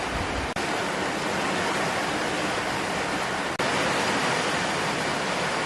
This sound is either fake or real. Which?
real